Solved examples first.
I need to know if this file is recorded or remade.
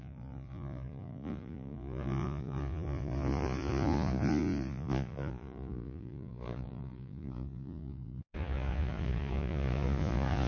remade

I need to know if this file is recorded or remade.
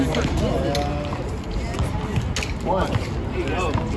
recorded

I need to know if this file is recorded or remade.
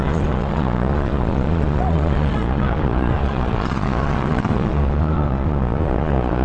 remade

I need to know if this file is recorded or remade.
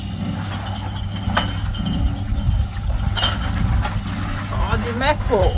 recorded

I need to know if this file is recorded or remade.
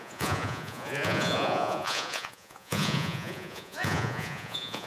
remade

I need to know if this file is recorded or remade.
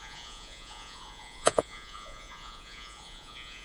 remade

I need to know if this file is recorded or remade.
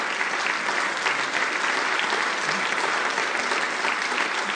recorded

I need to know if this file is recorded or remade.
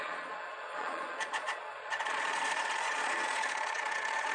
remade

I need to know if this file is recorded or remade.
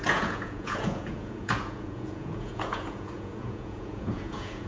remade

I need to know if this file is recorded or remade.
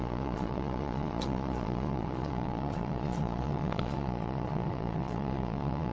remade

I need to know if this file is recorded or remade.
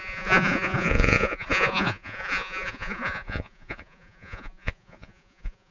remade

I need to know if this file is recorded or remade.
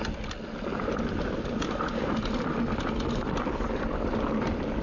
recorded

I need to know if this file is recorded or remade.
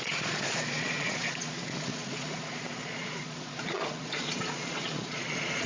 remade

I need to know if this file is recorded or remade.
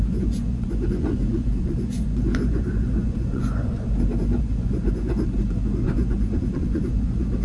remade